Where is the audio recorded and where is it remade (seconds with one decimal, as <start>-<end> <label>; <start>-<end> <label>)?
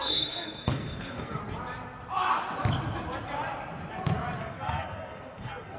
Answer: 0.0-1.4 remade; 1.4-4.4 recorded; 4.4-5.8 remade